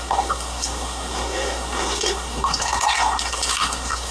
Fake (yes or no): yes